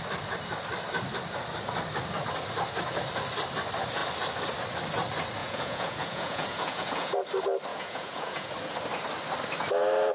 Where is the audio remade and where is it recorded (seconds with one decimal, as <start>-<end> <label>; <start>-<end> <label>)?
0.0-5.4 recorded; 5.4-7.1 remade; 7.1-7.7 recorded; 7.7-8.5 remade; 8.5-10.1 recorded